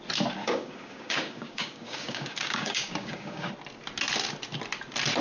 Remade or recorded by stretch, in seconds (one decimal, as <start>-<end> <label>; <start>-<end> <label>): 0.0-0.4 recorded; 0.4-3.5 remade; 3.5-5.2 recorded